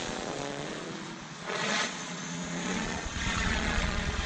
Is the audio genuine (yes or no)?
no